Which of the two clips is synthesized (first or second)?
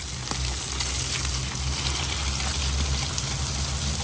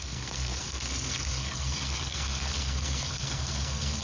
second